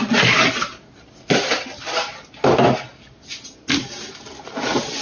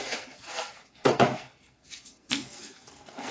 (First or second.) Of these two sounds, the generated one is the second